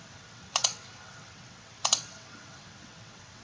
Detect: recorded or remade remade